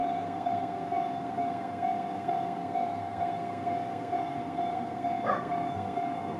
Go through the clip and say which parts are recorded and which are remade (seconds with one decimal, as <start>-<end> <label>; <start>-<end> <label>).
0.0-6.4 remade